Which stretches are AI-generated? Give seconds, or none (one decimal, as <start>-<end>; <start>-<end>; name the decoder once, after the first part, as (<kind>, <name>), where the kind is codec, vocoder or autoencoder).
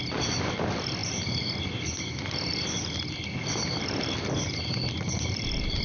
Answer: none